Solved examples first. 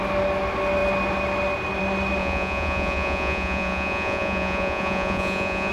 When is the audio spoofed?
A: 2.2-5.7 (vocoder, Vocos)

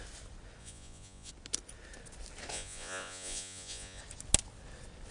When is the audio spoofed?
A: 0.6-1.3 (vocoder, Vocos); 2.5-4.0

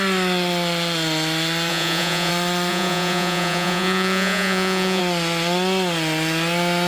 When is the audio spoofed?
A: 1.7-2.3 (vocoder, Vocos); 2.7-5.0

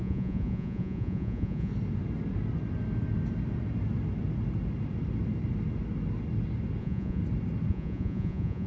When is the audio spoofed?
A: 0.0-1.7 (vocoder, Vocos); 6.8-7.2; 7.7-8.7

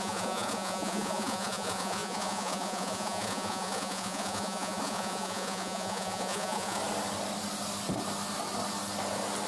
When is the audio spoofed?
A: 0.0-6.8 (vocoder, Vocos)